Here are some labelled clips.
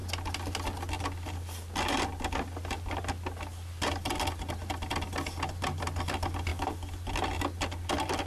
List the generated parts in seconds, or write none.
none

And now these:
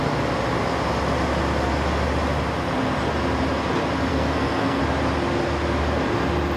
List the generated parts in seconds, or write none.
4.1-4.8 (codec, SNAC)

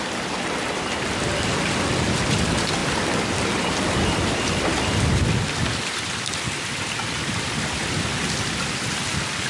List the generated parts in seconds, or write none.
none